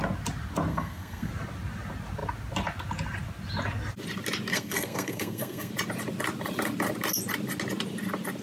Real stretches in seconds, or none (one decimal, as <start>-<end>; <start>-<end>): 0.0-0.7; 1.3-4.5; 5.7-8.4